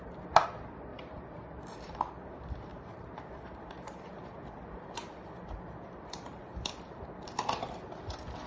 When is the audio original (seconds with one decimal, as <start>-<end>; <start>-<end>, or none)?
0.0-0.9; 2.1-2.7; 7.4-8.5